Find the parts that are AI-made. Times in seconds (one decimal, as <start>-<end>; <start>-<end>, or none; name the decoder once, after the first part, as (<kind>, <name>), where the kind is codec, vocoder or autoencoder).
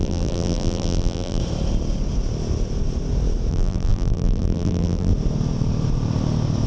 0.0-1.4 (vocoder, BigVGAN v2); 3.5-5.1